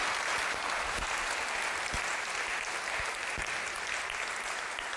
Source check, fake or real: real